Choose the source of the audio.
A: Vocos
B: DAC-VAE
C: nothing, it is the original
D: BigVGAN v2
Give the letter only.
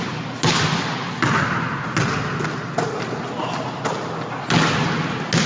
C